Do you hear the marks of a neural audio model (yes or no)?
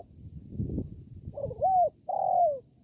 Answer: no